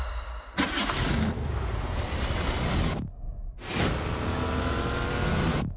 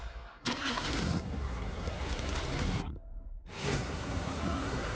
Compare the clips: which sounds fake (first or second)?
second